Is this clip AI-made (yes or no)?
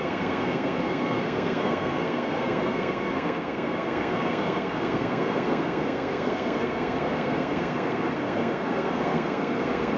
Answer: yes